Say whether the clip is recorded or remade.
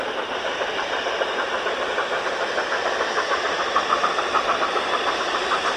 recorded